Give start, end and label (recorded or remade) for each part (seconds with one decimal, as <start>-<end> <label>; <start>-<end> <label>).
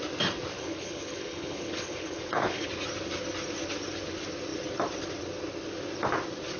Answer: 0.0-0.5 recorded; 0.5-2.7 remade; 2.7-6.6 recorded